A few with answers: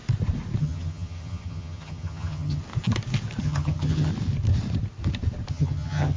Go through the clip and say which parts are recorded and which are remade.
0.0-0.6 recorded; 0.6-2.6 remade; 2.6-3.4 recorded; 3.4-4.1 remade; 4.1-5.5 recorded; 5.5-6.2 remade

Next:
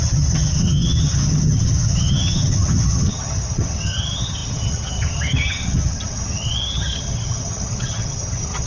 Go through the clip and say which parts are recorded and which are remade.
0.0-8.7 remade

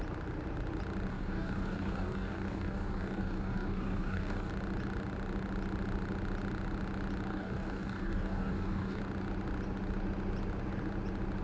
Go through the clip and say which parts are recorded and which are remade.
0.0-1.1 recorded; 1.1-4.5 remade; 4.5-7.3 recorded; 7.3-9.0 remade; 9.0-11.4 recorded

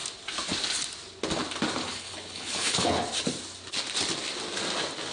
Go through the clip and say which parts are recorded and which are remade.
0.0-1.8 recorded; 1.8-3.0 remade; 3.0-5.1 recorded

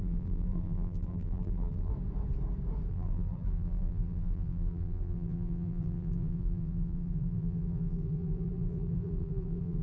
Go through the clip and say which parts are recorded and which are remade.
0.0-1.9 remade; 1.9-2.9 recorded; 2.9-9.8 remade

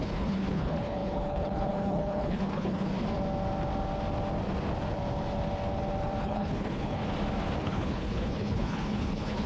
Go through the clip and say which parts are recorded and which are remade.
0.0-2.9 remade; 2.9-6.2 recorded; 6.2-7.0 remade; 7.0-7.6 recorded; 7.6-9.5 remade

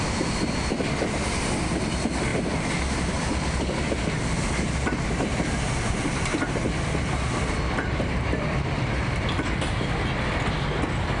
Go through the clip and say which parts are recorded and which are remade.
0.0-11.2 recorded